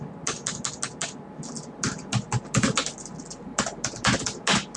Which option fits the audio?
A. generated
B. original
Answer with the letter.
B